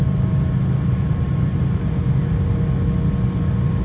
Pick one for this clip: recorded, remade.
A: recorded